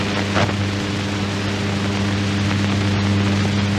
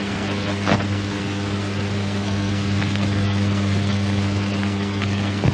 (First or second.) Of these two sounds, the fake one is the second